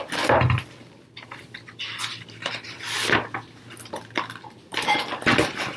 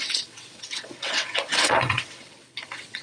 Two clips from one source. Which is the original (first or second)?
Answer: first